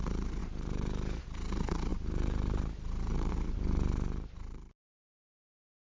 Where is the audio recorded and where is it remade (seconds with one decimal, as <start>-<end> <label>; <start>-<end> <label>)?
0.0-5.9 remade